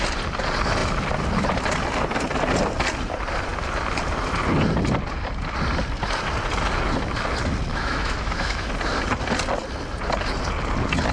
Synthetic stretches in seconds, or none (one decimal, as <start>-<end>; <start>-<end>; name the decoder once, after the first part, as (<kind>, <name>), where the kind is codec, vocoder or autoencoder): 7.7-8.7 (autoencoder, DAC-VAE)